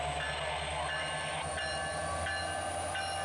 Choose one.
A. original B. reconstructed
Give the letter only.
A